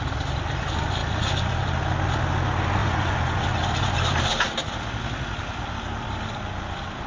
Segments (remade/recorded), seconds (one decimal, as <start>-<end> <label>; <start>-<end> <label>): 0.0-2.8 recorded; 2.8-3.4 remade; 3.4-7.1 recorded